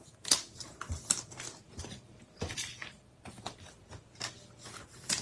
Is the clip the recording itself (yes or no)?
no